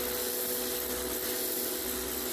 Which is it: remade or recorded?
recorded